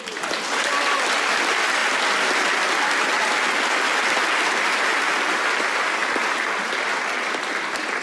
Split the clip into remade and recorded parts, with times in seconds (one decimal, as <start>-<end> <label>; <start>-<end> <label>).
0.0-8.0 recorded